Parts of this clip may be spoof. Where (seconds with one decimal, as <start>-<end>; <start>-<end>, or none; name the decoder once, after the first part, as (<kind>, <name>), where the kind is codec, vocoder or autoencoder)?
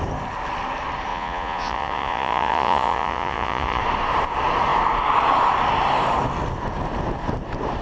1.1-3.8 (vocoder, Vocos)